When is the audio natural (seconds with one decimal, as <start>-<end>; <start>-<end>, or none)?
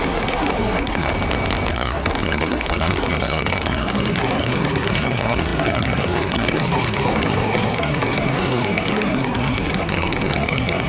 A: 1.1-1.7